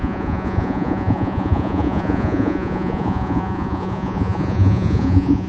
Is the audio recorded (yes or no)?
no